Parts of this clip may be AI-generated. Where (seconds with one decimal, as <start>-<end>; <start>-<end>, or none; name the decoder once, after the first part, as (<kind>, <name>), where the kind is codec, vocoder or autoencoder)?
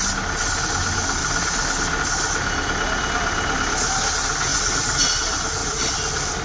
4.5-5.0 (vocoder, BigVGAN v2); 5.6-6.4